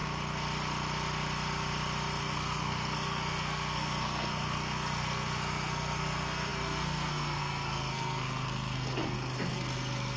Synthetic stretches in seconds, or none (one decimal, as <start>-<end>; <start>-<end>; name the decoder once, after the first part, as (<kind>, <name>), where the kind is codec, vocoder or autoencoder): 2.2-10.2 (codec, SNAC)